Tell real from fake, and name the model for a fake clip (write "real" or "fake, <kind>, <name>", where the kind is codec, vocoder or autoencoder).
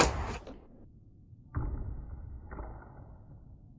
real